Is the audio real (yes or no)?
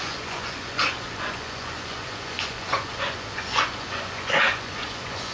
no